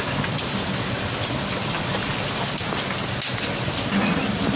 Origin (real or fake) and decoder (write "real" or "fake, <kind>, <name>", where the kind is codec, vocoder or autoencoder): real